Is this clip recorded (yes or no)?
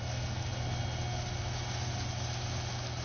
yes